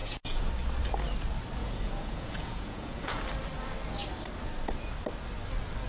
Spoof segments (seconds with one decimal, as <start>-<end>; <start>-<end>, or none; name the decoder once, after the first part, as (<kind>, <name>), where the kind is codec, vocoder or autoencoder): 0.0-0.5 (vocoder, Vocos); 1.6-3.2